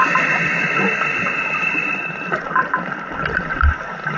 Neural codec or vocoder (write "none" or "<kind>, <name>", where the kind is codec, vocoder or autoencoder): none